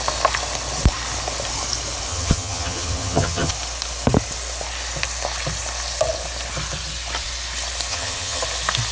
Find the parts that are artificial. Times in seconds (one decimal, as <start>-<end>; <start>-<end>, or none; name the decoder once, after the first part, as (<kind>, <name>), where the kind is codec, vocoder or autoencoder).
2.1-3.5 (vocoder, HiFi-GAN); 7.9-8.4